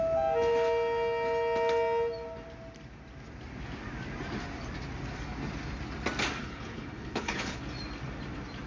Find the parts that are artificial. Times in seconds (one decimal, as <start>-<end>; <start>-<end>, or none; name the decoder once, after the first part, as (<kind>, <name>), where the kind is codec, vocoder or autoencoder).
6.4-7.6 (codec, HILCodec)